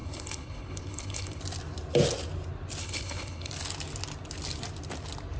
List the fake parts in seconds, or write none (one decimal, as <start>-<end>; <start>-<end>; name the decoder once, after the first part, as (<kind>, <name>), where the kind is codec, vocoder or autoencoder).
0.0-1.4 (codec, HILCodec); 2.8-3.5